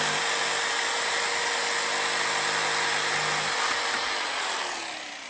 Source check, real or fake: real